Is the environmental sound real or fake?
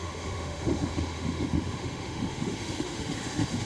fake